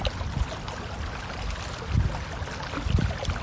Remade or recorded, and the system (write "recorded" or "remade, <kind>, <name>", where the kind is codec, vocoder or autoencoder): recorded